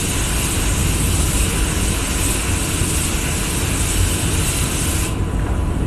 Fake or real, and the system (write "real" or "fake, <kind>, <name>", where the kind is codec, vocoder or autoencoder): real